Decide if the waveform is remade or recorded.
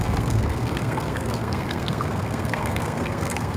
remade